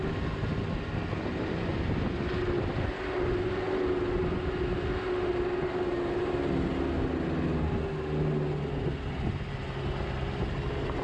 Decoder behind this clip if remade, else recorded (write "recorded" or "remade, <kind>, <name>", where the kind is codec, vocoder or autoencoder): recorded